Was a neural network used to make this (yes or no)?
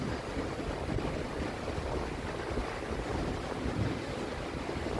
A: no